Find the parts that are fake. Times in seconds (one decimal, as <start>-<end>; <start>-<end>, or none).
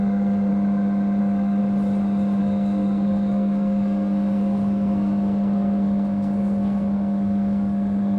0.0-0.5; 1.2-1.6; 2.4-8.2